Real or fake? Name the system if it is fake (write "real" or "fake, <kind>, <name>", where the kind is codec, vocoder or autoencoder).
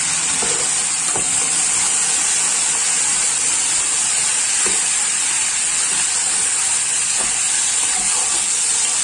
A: real